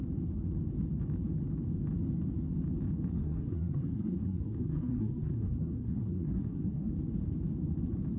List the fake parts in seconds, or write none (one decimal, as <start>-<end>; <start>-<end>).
3.2-6.9